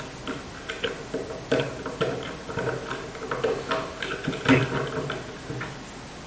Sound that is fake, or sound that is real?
real